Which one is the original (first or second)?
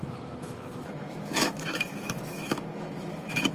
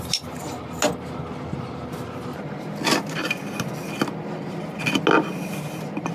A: second